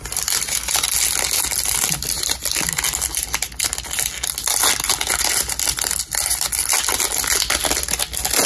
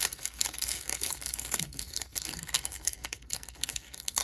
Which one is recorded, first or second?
first